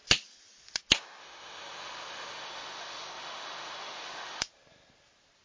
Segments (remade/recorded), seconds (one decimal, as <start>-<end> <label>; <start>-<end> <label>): 0.0-1.2 recorded; 1.2-4.4 remade; 4.4-5.4 recorded